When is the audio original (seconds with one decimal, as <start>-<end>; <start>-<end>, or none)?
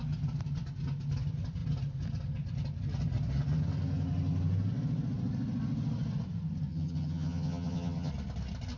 0.0-6.7; 8.1-8.8